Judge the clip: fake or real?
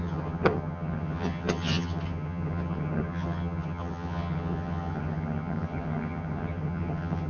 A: fake